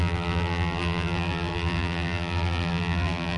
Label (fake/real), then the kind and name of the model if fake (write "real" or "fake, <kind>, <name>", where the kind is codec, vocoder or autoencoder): fake, vocoder, BigVGAN v2